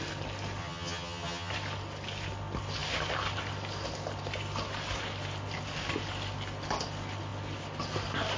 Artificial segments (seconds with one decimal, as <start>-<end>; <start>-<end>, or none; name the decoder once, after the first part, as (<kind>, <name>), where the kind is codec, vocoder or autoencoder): 0.6-1.5 (vocoder, HiFi-GAN)